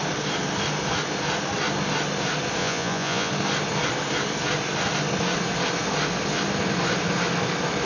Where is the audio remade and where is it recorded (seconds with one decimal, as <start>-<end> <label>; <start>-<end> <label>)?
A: 0.0-2.6 recorded; 2.6-3.3 remade; 3.3-7.9 recorded